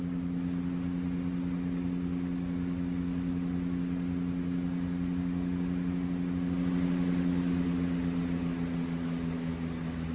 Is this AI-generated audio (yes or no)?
no